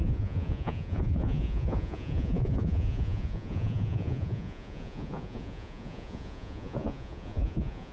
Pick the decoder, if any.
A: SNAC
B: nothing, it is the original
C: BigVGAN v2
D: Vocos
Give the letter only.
D